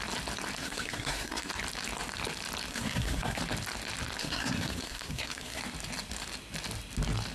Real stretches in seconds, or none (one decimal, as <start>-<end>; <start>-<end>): 0.0-0.6; 1.5-2.7; 3.4-4.2; 5.6-7.3